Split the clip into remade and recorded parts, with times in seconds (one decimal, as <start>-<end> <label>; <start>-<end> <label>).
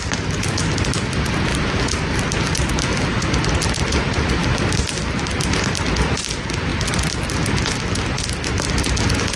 0.0-1.5 recorded; 1.5-4.7 remade; 4.7-9.4 recorded